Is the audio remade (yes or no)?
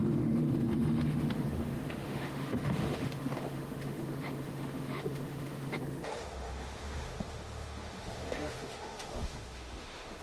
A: yes